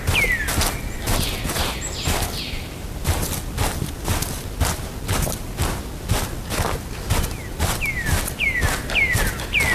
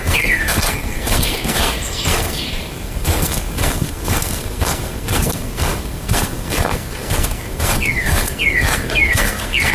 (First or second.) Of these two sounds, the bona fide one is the first